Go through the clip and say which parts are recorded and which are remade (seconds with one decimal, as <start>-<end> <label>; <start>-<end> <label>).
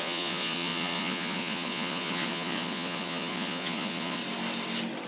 0.0-4.2 remade; 4.2-5.1 recorded